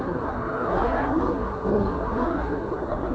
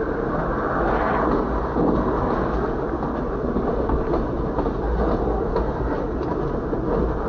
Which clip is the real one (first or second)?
second